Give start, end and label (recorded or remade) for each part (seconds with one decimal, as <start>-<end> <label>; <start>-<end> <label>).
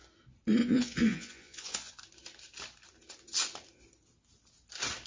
0.0-0.6 recorded; 0.6-2.0 remade; 2.0-5.1 recorded